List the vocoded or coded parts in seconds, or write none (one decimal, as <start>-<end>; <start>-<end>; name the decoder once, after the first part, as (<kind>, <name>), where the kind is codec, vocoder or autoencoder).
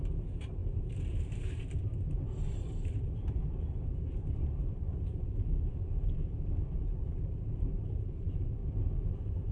0.0-8.6 (vocoder, BigVGAN v2); 9.1-9.5